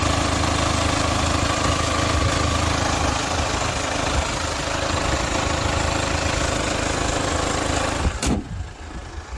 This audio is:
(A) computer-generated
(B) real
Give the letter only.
B